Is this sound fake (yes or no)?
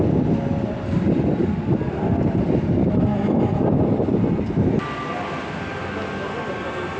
yes